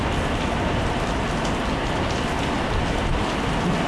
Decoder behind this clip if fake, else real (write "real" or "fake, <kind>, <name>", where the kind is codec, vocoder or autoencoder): real